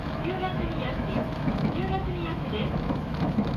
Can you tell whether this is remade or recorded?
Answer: remade